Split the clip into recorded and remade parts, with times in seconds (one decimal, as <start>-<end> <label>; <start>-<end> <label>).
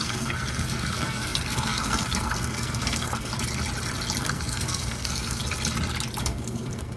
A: 0.0-3.3 remade; 3.3-4.2 recorded; 4.2-5.4 remade; 5.4-6.2 recorded; 6.2-7.0 remade